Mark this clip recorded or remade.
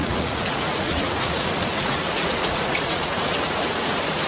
remade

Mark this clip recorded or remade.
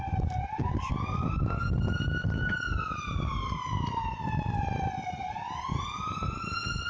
recorded